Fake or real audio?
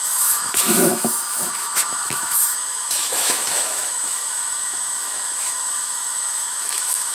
fake